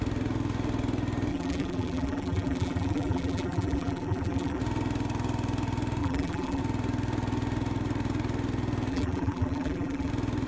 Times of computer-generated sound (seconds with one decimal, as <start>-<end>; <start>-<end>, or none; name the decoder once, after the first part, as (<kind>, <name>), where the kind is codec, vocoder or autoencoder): 1.3-4.6 (vocoder, BigVGAN v2); 6.0-6.6; 8.9-10.1